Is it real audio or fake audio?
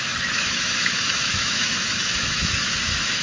fake